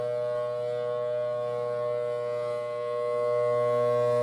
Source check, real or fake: real